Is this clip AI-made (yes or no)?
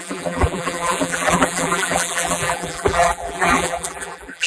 yes